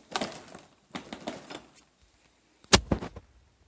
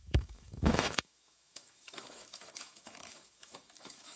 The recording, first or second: first